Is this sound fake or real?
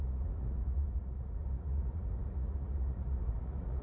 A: fake